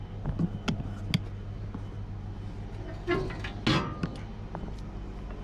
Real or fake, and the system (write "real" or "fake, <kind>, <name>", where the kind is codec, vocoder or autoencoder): real